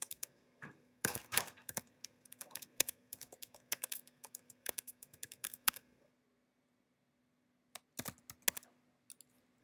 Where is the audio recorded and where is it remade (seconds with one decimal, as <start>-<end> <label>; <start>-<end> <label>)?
0.0-6.1 remade; 6.1-9.6 recorded